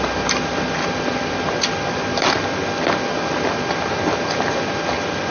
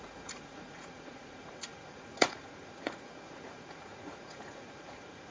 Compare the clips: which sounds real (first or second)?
first